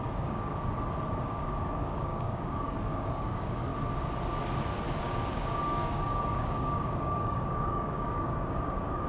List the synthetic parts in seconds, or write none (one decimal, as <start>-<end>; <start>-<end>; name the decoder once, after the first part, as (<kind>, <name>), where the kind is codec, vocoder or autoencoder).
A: 0.0-0.5 (codec, DAC); 1.2-3.7; 5.0-9.1